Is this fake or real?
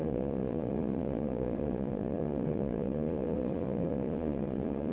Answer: fake